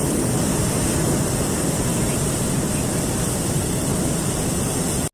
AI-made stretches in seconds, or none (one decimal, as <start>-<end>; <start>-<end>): 1.9-2.5; 3.9-5.1